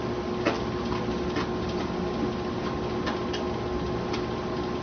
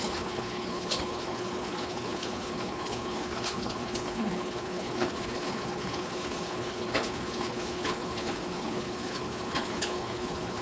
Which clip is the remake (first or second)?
second